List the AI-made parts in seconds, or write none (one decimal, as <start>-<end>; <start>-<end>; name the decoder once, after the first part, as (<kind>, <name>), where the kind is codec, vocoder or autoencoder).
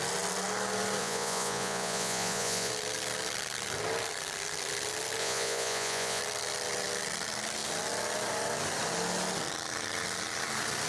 1.0-2.7 (vocoder, Vocos); 5.2-6.2